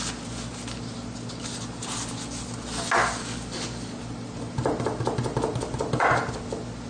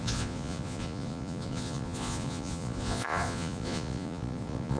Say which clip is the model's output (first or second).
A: second